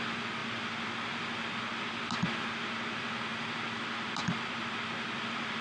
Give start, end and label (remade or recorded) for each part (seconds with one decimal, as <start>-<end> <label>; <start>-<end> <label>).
0.0-5.6 recorded